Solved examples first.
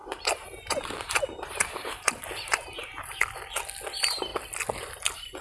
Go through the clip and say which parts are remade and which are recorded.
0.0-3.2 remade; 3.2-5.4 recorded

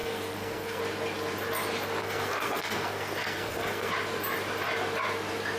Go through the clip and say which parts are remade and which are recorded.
0.0-0.8 remade; 0.8-2.0 recorded; 2.0-3.9 remade; 3.9-5.6 recorded

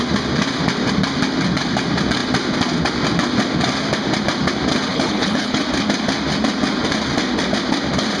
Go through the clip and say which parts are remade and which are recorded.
0.0-4.9 recorded; 4.9-5.6 remade; 5.6-8.2 recorded

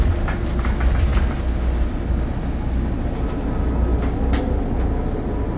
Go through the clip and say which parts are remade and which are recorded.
0.0-5.6 recorded

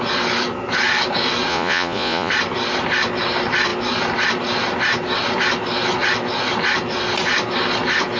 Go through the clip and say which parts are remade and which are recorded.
0.0-1.5 recorded; 1.5-2.3 remade; 2.3-8.2 recorded

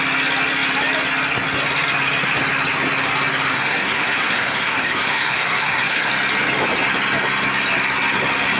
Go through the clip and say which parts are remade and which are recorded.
0.0-3.5 recorded; 3.5-6.1 remade; 6.1-8.6 recorded

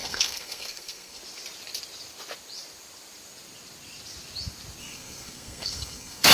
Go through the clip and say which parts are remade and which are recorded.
0.0-1.2 remade; 1.2-4.8 recorded; 4.8-6.3 remade

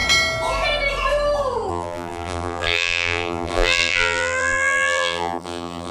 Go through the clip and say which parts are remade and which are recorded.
0.0-1.7 recorded; 1.7-5.9 remade